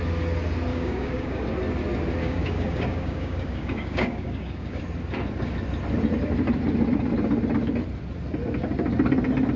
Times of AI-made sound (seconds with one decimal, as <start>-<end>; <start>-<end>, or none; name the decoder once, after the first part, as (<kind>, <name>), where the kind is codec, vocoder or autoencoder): 0.7-1.4 (codec, DAC); 2.2-4.8